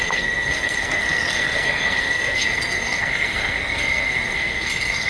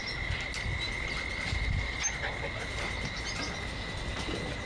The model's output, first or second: first